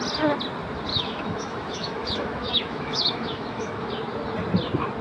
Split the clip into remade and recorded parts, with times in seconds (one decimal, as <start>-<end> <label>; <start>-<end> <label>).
0.0-0.9 recorded; 0.9-3.9 remade; 3.9-5.0 recorded